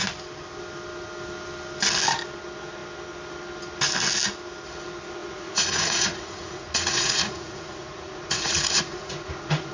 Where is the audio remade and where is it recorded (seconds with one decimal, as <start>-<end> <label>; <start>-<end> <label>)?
0.0-5.2 recorded; 5.2-9.7 remade